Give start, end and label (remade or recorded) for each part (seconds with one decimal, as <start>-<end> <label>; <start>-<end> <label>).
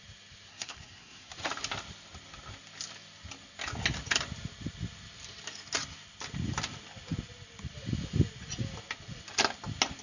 0.0-0.5 recorded; 0.5-1.3 remade; 1.3-10.0 recorded